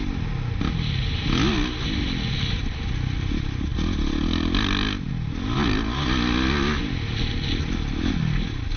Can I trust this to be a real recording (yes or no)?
yes